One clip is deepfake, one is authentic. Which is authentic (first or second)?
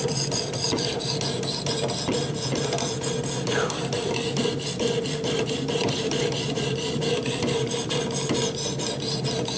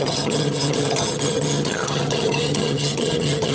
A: first